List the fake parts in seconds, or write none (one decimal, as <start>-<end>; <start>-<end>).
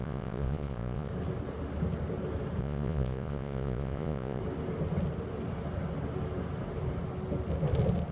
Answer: 0.0-1.1; 2.6-4.4